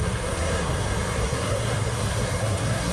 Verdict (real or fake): fake